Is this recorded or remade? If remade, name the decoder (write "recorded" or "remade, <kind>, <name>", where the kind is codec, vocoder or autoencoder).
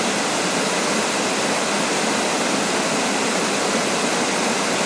recorded